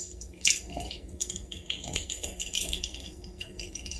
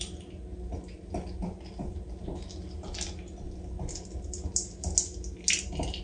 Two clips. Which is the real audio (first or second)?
second